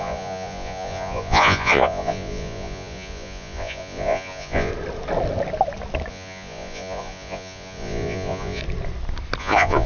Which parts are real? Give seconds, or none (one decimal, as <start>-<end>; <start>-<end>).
4.7-6.1; 8.6-9.4